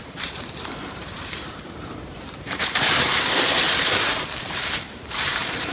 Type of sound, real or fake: fake